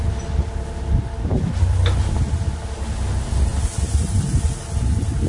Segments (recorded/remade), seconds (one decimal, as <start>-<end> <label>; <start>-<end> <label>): 0.0-5.3 recorded